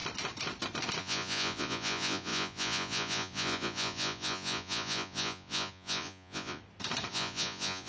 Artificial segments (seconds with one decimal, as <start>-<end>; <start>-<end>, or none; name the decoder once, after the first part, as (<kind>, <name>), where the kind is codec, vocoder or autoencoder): 1.0-6.6 (vocoder, Vocos); 7.1-7.9